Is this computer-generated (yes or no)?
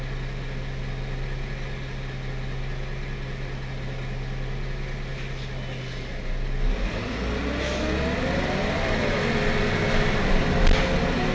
no